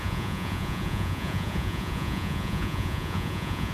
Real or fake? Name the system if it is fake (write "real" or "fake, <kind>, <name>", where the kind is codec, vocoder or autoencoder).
fake, vocoder, Vocos